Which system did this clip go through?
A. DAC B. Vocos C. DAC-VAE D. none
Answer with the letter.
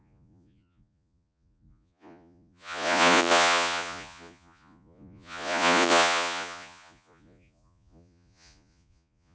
B